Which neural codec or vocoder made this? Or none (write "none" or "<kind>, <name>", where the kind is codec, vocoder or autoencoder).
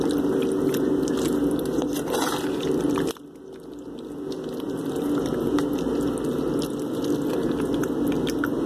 none